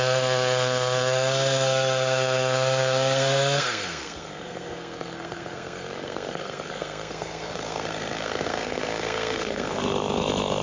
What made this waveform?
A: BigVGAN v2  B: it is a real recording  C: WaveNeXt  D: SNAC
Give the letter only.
D